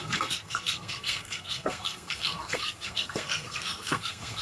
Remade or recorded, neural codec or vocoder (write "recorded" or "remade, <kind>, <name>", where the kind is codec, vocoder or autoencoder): remade, codec, SNAC